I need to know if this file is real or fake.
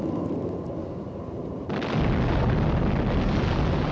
real